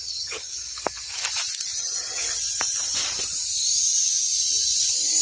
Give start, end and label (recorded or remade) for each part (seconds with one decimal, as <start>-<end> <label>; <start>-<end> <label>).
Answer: 0.0-0.5 remade; 0.5-1.8 recorded; 1.8-2.2 remade; 2.2-5.2 recorded